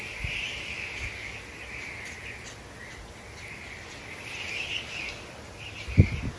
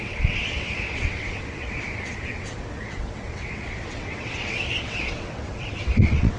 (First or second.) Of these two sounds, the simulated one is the second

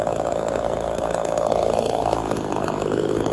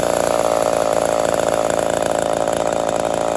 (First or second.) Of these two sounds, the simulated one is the first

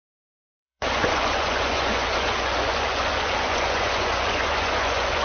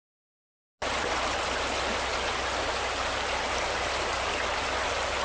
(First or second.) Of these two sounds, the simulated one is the first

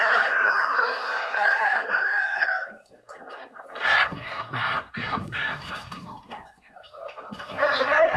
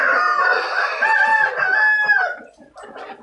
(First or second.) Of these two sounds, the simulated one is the first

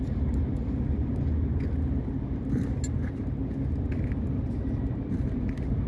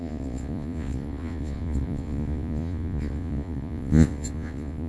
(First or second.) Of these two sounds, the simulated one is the second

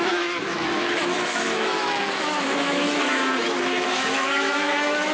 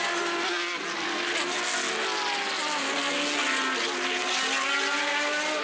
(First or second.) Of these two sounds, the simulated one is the first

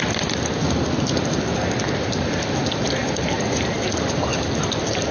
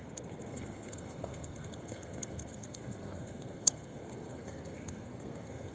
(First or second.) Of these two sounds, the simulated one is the second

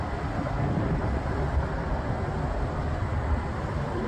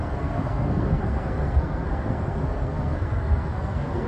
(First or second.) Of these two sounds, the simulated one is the second